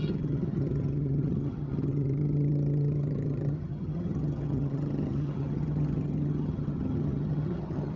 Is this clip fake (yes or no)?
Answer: yes